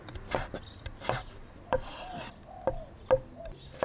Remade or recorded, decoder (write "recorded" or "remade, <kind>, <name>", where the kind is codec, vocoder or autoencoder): recorded